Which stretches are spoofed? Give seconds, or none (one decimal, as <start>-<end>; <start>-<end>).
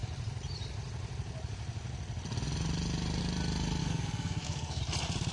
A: 3.8-4.8